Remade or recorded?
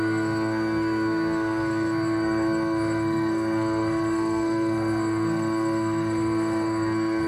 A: remade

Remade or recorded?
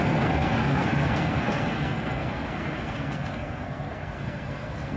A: remade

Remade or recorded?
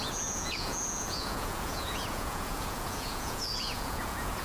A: remade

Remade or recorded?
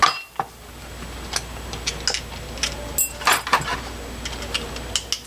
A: recorded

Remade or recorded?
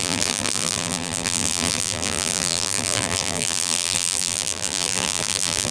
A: remade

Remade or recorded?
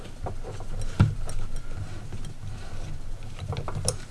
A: recorded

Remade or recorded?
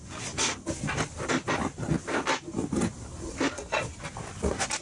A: recorded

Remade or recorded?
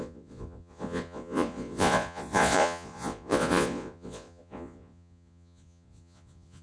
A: remade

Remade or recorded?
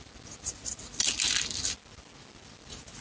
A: recorded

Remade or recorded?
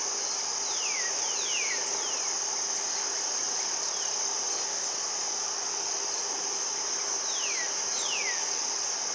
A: recorded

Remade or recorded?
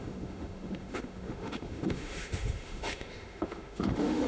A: remade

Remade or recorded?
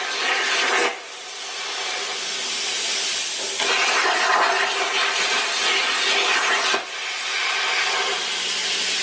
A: recorded